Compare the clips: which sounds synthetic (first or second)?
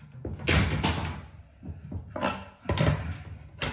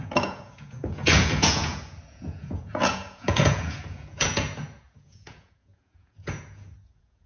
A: second